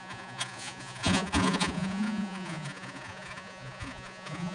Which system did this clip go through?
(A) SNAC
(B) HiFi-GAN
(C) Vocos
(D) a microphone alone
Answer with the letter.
C